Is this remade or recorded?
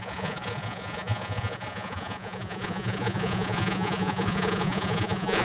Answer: remade